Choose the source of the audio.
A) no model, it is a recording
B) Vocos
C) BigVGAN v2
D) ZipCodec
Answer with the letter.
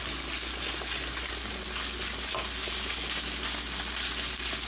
A